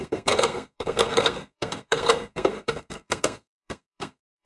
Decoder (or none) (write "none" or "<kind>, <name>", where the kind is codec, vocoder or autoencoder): codec, SNAC